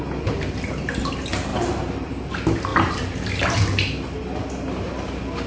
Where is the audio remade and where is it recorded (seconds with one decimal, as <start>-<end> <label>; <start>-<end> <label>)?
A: 0.0-1.5 recorded; 1.5-2.1 remade; 2.1-2.7 recorded; 2.7-3.5 remade; 3.5-5.5 recorded